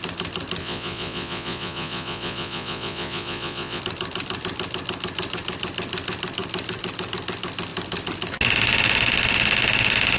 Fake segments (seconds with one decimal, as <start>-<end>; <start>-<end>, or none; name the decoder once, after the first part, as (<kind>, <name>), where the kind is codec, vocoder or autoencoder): 0.6-3.8 (vocoder, Vocos)